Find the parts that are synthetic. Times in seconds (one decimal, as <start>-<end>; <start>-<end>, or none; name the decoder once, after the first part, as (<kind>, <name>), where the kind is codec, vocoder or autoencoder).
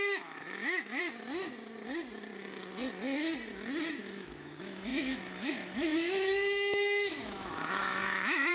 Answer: 0.0-1.0 (autoencoder, DAC-VAE); 4.0-8.5